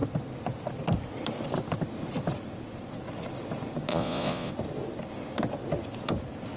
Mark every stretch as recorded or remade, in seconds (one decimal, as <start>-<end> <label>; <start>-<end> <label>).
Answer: 0.0-3.9 recorded; 3.9-4.5 remade; 4.5-6.6 recorded